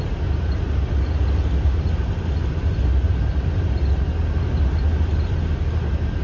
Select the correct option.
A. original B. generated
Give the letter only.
A